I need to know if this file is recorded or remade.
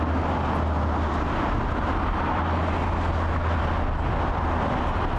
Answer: recorded